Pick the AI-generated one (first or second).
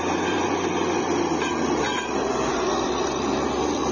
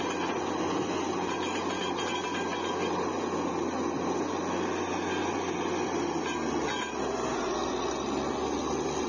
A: first